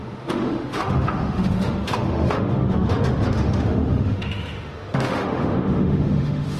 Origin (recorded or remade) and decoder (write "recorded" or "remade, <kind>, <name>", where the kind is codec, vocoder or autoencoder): remade, autoencoder, DAC-VAE